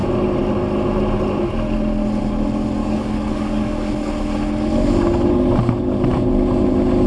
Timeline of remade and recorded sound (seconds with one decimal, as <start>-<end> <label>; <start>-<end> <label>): 0.0-2.8 recorded; 2.8-3.9 remade; 3.9-7.1 recorded